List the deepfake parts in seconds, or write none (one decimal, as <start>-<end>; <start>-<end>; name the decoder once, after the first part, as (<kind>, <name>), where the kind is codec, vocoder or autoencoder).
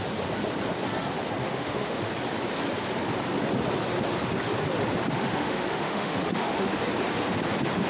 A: 1.4-2.1 (autoencoder, DAC-VAE); 5.1-6.8